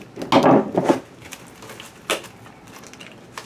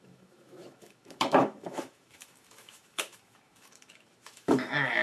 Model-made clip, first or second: second